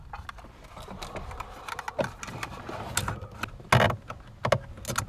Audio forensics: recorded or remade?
recorded